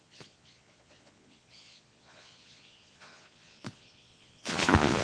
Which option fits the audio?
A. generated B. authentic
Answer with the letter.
A